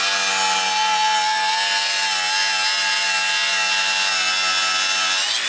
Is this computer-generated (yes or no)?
no